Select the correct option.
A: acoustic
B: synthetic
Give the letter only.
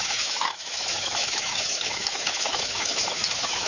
B